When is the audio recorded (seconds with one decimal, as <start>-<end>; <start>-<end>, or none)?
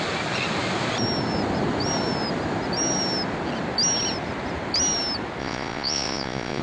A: 0.0-5.4